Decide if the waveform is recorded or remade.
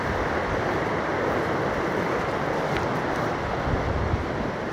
remade